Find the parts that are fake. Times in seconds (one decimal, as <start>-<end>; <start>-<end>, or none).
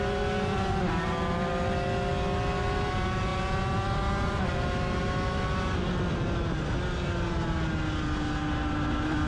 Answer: none